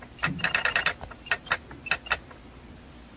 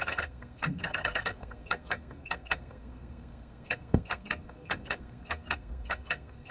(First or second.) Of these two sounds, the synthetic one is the second